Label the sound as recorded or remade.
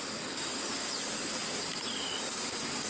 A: recorded